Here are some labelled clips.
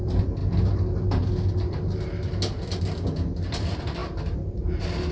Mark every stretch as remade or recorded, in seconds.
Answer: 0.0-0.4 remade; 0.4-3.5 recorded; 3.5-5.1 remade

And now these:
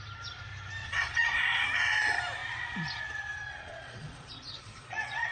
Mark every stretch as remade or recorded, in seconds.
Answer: 0.0-0.8 recorded; 0.8-1.6 remade; 1.6-3.5 recorded; 3.5-5.3 remade